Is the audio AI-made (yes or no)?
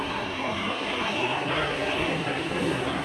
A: yes